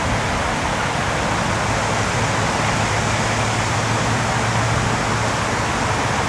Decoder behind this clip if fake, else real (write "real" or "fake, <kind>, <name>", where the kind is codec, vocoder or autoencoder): real